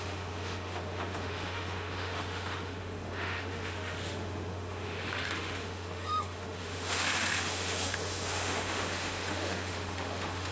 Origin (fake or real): fake